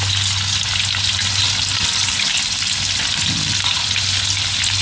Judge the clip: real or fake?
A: real